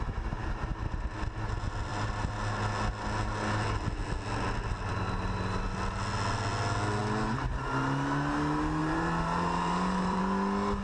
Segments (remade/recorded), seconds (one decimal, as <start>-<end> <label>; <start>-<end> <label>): 0.0-8.8 recorded; 8.8-10.2 remade; 10.2-10.8 recorded